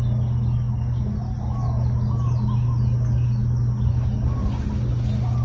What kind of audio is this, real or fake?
real